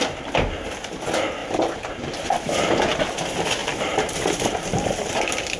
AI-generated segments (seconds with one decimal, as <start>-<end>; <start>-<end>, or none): 1.4-2.5; 3.6-5.6